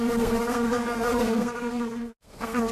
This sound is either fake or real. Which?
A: fake